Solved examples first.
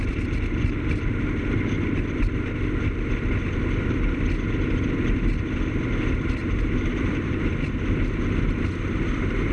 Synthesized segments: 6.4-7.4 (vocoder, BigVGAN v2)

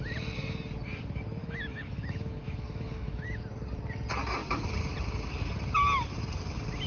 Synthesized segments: 1.4-3.4 (autoencoder, DAC-VAE)

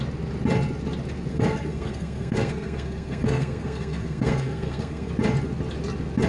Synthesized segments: 1.3-5.1 (codec, SNAC)

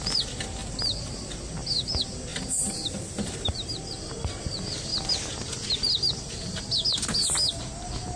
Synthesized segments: 0.6-1.5 (vocoder, BigVGAN v2); 2.3-4.2

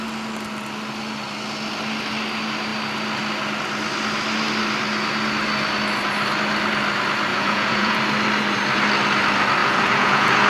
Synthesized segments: 7.3-8.0 (vocoder, Vocos); 9.6-10.5